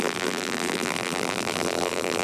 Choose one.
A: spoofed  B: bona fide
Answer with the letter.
A